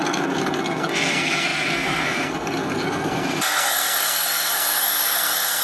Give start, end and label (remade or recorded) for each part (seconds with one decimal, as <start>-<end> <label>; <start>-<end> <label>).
0.0-5.6 remade